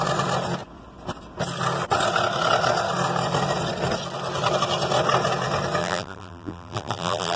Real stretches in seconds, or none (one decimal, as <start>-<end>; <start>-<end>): 0.0-5.8